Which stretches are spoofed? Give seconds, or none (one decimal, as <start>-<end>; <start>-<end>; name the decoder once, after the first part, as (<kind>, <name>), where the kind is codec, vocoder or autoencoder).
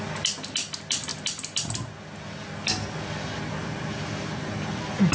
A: none